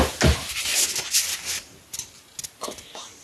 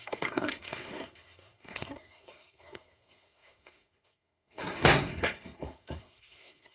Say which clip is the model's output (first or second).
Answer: second